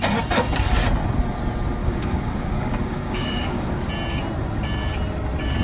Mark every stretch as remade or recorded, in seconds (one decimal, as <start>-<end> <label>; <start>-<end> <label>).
0.0-1.8 recorded; 1.8-3.9 remade; 3.9-5.6 recorded